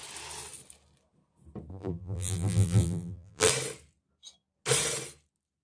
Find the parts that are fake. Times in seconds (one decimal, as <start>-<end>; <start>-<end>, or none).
1.7-3.5